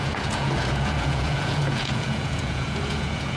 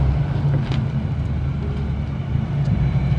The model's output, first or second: first